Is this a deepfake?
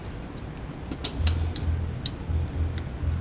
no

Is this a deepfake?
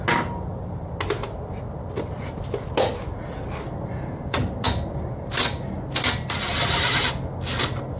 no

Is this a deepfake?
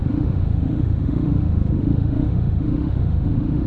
yes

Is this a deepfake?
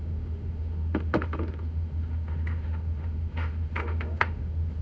yes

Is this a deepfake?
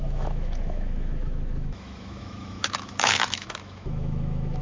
yes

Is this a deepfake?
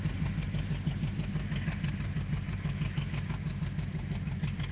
no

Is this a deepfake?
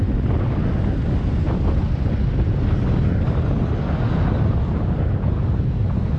no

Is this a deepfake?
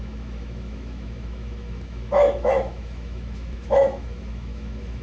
yes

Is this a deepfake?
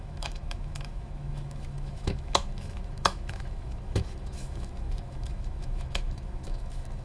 yes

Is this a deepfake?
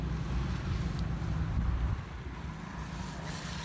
no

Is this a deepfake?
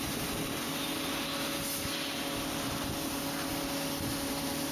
no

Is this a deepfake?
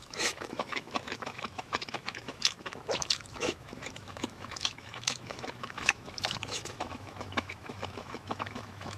yes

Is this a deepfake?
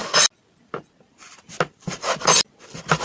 no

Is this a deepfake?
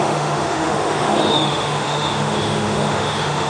yes